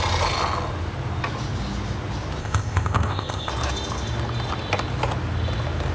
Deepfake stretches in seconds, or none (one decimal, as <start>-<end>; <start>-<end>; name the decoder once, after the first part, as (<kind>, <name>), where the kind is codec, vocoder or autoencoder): 2.4-3.5 (codec, ZipCodec)